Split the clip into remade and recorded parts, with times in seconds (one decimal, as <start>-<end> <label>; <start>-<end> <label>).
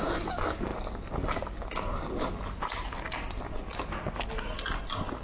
0.0-5.2 recorded